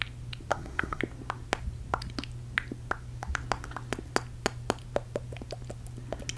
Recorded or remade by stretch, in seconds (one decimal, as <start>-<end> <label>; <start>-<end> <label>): 0.0-0.5 recorded; 0.5-1.0 remade; 1.0-6.4 recorded